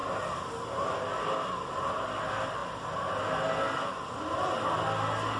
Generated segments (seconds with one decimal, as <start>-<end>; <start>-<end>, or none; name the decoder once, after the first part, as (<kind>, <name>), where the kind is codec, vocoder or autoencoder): none